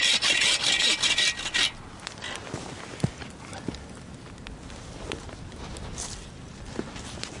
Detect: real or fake real